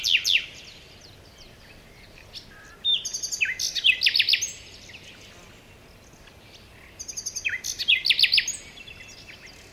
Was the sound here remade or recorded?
recorded